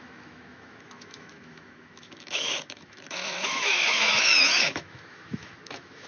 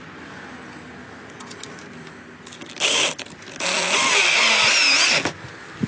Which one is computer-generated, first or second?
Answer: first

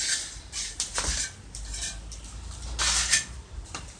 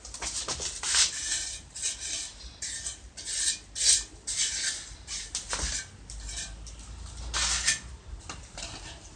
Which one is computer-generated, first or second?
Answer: first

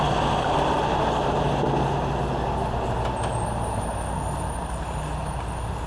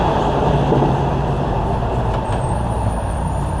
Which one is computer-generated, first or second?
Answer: second